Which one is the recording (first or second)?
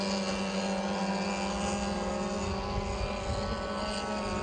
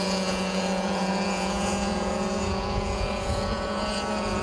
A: first